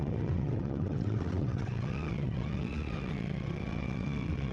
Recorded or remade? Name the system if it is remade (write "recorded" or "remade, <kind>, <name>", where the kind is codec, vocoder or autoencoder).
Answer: remade, vocoder, WaveNeXt